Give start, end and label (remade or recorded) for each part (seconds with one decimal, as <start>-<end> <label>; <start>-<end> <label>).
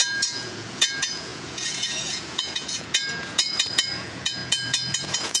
0.0-5.4 remade